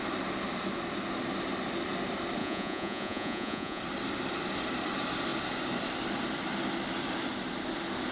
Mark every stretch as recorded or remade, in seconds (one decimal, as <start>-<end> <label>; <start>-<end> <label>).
0.0-2.4 recorded; 2.4-3.8 remade; 3.8-8.1 recorded